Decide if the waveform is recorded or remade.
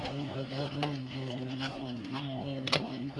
remade